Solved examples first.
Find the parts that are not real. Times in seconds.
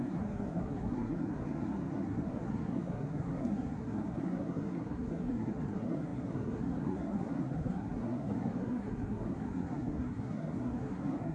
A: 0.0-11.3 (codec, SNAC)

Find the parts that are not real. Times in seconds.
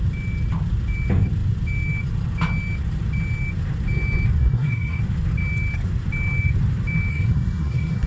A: 4.4-5.0 (codec, SNAC); 7.1-8.1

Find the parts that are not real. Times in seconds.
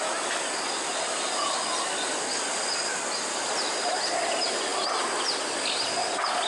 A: none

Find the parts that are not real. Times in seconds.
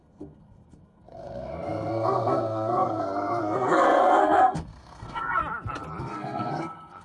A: 0.0-5.4 (codec, SNAC); 6.0-7.0